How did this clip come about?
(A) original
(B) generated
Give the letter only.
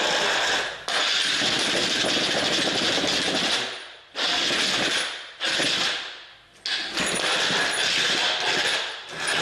A